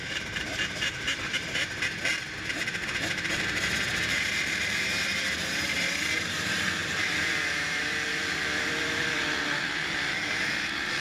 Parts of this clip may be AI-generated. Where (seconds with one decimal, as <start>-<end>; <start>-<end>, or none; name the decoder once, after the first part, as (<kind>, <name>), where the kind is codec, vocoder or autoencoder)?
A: 0.0-2.1 (vocoder, BigVGAN v2); 3.3-11.0